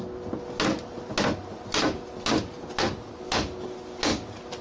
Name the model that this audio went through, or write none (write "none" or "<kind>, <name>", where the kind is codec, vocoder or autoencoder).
none